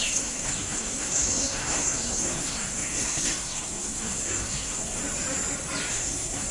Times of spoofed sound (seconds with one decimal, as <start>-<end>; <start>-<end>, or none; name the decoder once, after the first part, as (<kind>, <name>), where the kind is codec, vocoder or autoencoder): 0.0-5.0 (codec, SNAC); 5.9-6.5